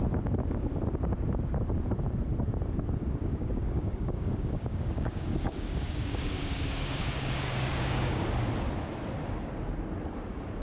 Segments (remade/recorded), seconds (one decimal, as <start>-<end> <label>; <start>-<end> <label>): 0.0-3.2 recorded; 3.2-8.5 remade; 8.5-10.6 recorded